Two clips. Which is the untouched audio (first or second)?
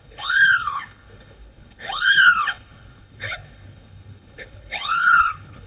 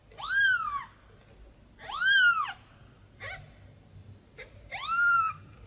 second